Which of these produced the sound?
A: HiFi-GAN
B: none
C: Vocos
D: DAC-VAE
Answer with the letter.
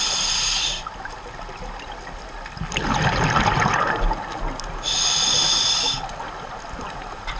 B